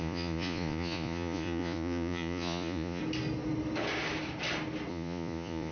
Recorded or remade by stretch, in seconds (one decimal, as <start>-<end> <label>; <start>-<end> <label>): 0.0-3.0 remade; 3.0-4.9 recorded; 4.9-5.7 remade